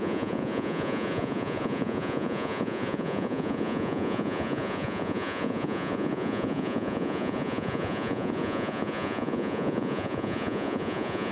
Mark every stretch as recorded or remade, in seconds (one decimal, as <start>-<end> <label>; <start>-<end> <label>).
0.0-11.3 remade